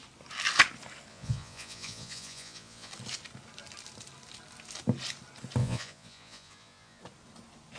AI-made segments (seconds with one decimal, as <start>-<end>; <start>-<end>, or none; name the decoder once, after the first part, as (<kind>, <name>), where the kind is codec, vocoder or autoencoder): 1.1-2.9 (vocoder, Vocos); 5.6-7.0